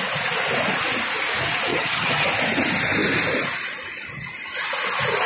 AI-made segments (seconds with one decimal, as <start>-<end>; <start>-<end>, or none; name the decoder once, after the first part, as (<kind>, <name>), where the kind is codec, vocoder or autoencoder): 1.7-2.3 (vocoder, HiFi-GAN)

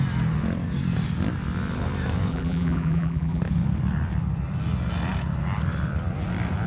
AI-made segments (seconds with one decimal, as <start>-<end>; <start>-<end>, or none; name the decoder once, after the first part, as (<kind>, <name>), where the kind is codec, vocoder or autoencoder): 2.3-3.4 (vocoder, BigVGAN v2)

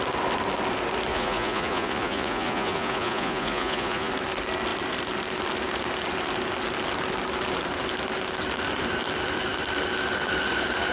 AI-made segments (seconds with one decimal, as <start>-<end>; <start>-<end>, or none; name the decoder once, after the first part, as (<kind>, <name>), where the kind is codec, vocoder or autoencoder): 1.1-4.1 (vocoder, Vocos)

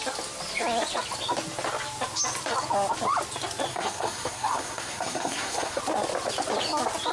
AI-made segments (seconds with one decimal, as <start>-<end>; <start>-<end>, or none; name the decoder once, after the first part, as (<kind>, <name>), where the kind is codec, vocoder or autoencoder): 3.7-5.8 (codec, SNAC)